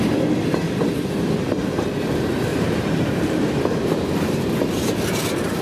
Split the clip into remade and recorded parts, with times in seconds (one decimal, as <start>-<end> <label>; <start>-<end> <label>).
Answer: 0.0-2.5 recorded; 2.5-4.5 remade; 4.5-5.6 recorded